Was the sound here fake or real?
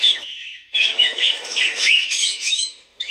fake